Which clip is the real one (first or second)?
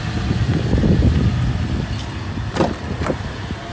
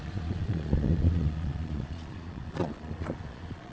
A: first